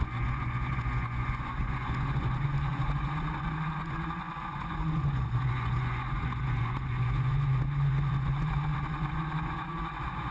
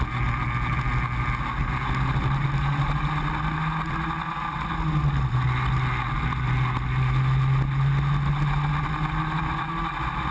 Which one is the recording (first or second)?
second